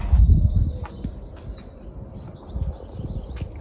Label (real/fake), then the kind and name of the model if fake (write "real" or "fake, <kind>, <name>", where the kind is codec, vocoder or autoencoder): real